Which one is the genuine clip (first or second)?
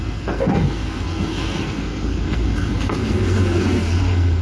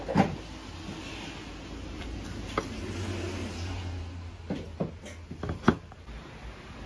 second